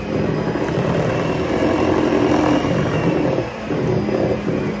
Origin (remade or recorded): remade